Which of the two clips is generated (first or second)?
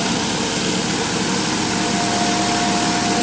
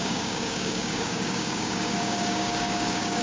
second